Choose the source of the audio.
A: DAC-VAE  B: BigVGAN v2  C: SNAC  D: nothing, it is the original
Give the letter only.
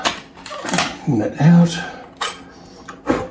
D